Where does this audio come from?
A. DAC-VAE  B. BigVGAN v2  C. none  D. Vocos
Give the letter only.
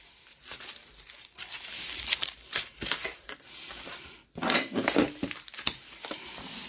B